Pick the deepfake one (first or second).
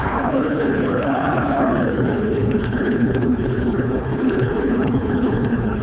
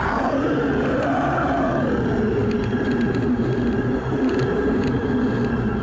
first